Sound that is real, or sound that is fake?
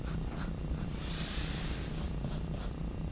real